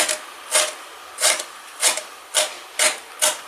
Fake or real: real